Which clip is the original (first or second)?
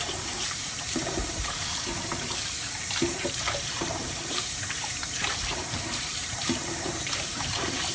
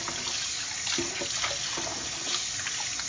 second